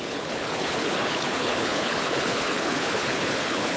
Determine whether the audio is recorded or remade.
remade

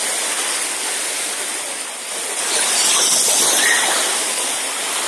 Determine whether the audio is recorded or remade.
recorded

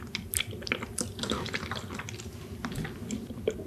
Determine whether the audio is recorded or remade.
recorded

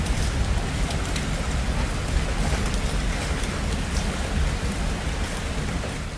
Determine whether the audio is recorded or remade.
recorded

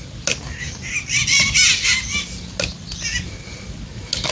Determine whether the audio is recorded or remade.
recorded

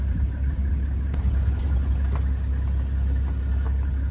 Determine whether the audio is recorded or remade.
recorded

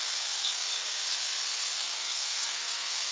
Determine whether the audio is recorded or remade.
remade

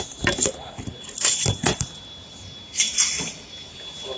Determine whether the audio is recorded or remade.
recorded